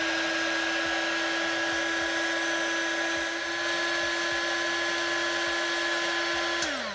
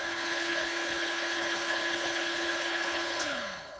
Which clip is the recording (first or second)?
first